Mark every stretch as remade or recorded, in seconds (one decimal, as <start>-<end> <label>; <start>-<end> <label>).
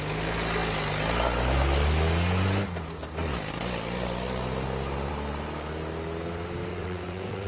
0.0-6.7 recorded; 6.7-7.5 remade